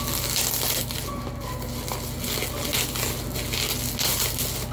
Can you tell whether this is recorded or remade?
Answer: recorded